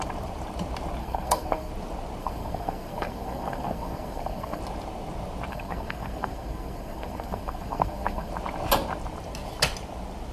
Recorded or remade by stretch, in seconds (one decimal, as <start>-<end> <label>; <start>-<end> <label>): 0.0-1.0 recorded; 1.0-1.7 remade; 1.7-2.2 recorded; 2.2-4.6 remade; 4.6-5.5 recorded; 5.5-8.3 remade; 8.3-10.3 recorded